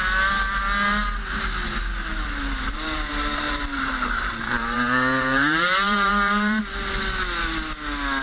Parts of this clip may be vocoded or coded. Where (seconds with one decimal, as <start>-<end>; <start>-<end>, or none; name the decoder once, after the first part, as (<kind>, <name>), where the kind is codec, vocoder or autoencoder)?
2.1-6.6 (vocoder, BigVGAN v2)

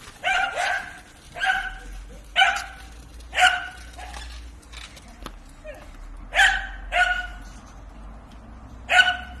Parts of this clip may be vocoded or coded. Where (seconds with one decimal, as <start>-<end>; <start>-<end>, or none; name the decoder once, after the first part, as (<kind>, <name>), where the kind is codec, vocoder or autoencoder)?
none

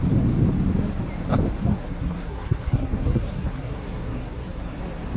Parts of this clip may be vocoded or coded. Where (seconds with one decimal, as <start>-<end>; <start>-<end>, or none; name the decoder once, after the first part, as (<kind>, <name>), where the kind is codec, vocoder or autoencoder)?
1.7-4.8 (codec, SNAC)

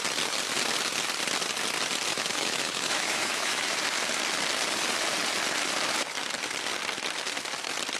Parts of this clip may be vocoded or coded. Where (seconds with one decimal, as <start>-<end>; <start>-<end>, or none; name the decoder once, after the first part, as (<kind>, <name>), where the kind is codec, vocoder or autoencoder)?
2.1-3.8 (autoencoder, DAC-VAE)